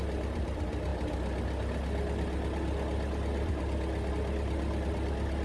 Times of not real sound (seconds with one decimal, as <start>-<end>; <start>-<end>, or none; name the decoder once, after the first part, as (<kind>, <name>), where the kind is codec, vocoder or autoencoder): none